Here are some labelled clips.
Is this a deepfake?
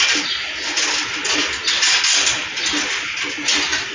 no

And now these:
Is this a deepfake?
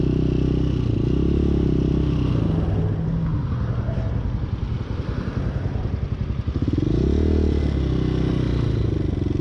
no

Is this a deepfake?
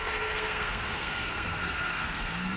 yes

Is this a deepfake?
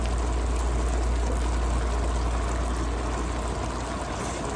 no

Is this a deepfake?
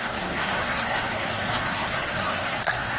yes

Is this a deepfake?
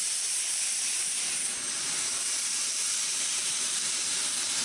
yes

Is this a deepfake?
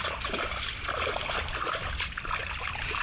yes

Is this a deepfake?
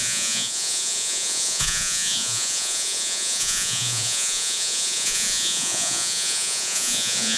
yes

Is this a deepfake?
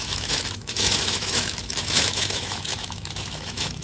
yes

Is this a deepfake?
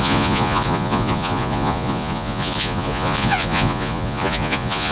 yes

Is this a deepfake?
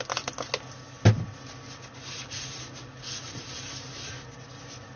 no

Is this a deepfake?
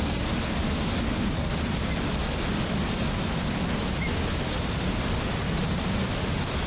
no